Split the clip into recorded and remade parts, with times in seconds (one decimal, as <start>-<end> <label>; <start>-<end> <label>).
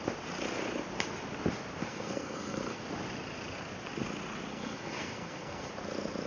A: 0.0-1.8 recorded; 1.8-2.8 remade; 2.8-4.5 recorded; 4.5-5.7 remade; 5.7-6.3 recorded